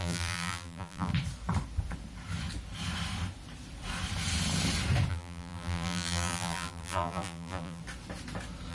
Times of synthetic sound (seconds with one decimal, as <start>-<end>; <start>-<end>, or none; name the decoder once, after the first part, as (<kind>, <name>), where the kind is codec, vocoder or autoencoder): 0.0-1.1 (vocoder, BigVGAN v2); 5.1-7.8